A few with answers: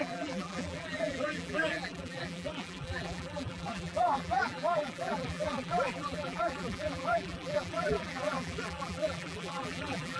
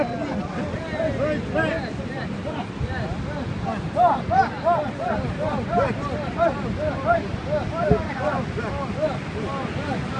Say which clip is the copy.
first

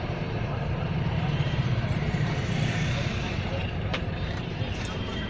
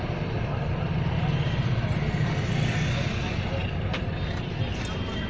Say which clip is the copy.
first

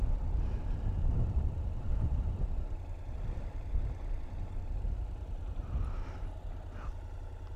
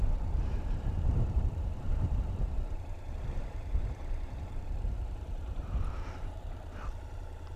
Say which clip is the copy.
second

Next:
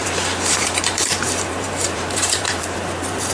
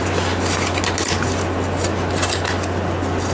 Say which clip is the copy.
first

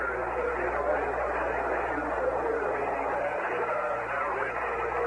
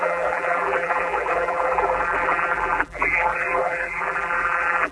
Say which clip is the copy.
second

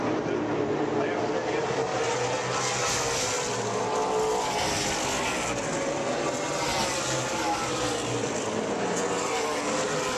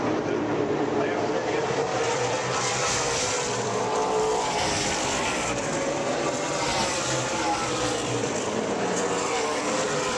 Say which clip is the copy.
second